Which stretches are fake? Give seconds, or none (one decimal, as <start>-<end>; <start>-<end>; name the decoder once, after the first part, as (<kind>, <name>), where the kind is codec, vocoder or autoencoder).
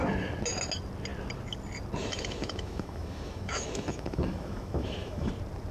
2.0-5.3 (autoencoder, DAC-VAE)